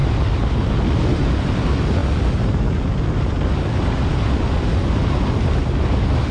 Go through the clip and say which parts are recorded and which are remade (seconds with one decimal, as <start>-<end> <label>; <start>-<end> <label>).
0.0-6.3 recorded